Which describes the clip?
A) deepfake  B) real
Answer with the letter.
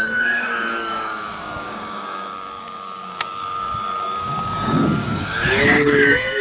A